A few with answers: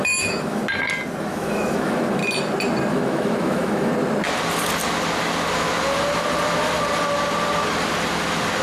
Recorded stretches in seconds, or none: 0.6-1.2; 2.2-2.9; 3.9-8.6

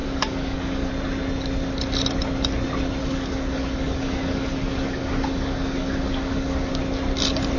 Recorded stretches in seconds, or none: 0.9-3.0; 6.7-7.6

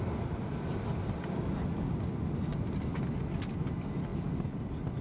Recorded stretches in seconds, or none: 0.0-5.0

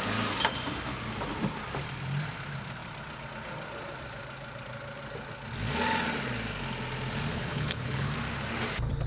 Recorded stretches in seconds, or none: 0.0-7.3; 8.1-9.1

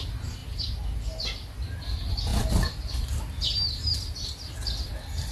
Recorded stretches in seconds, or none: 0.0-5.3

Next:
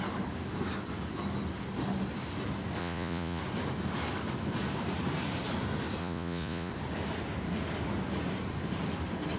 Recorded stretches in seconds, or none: 0.0-2.8; 3.4-6.0; 6.7-9.4

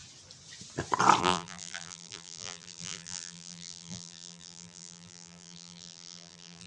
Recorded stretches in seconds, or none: 0.0-1.2

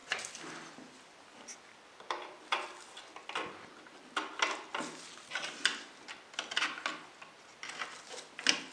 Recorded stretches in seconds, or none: 0.0-8.7